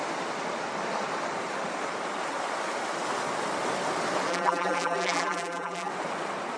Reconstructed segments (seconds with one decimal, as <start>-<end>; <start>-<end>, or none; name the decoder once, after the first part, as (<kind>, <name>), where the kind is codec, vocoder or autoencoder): 4.3-5.9 (vocoder, BigVGAN v2)